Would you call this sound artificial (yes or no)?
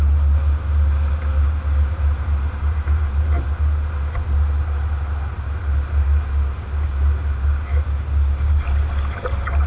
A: no